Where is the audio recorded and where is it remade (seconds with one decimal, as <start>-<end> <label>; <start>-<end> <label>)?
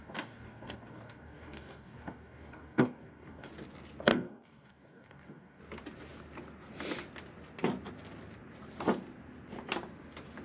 0.0-3.5 remade; 3.5-4.1 recorded; 4.1-5.6 remade; 5.6-10.4 recorded